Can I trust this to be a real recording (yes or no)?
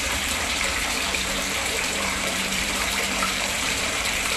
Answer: no